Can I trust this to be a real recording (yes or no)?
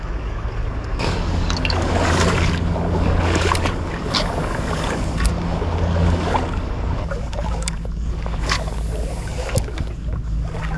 no